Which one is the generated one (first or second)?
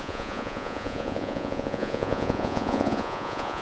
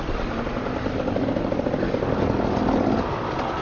first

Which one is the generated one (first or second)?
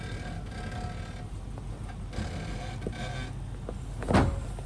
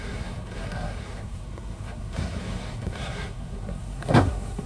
second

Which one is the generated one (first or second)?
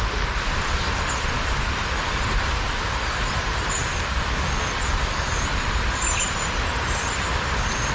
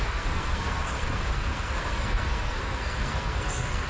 second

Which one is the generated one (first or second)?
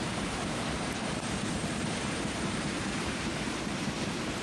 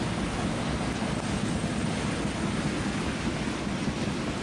first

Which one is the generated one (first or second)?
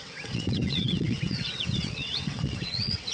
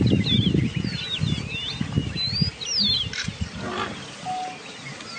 first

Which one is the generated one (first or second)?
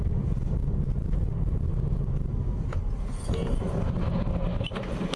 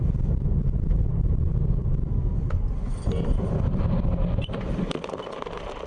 second